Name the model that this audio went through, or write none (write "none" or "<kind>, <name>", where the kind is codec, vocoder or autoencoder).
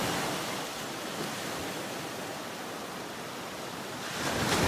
none